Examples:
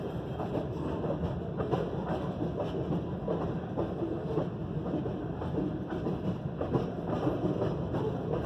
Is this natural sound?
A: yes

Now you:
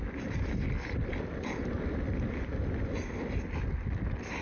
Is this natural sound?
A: yes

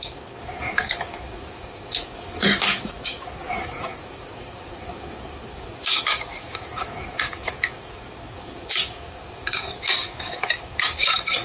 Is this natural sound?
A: no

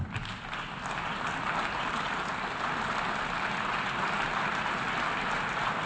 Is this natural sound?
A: yes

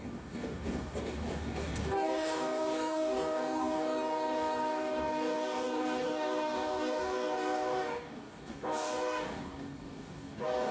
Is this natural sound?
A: no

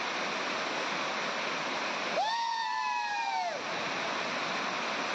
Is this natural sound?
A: yes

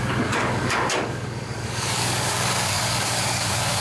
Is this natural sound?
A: no